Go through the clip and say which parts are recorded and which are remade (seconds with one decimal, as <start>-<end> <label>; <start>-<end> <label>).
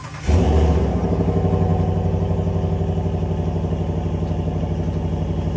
0.0-5.6 recorded